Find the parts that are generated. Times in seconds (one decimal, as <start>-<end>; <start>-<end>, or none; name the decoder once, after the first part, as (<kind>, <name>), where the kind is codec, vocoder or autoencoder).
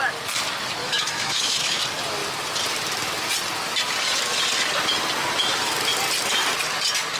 0.8-1.8 (autoencoder, DAC-VAE)